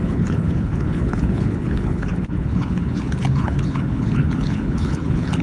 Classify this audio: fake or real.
fake